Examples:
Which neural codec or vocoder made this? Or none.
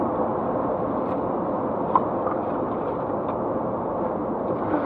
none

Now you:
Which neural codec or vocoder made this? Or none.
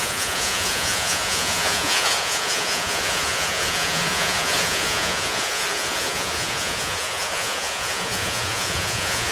vocoder, Vocos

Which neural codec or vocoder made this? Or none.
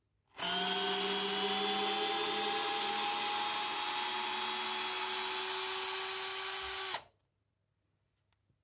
none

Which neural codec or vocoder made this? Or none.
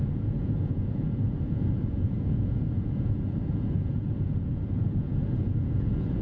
vocoder, Vocos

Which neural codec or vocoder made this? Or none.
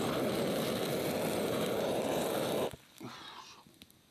none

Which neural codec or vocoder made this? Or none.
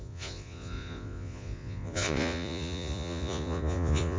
vocoder, Vocos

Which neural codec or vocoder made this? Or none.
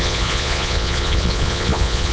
vocoder, Vocos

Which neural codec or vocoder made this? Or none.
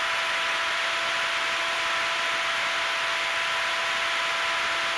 none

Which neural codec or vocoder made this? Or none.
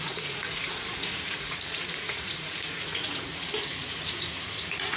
vocoder, Vocos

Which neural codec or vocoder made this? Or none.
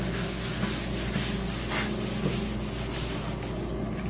none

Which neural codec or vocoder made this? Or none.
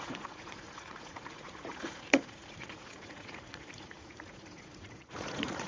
vocoder, Vocos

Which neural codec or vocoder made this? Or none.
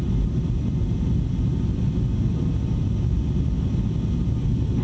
none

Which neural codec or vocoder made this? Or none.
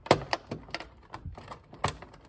none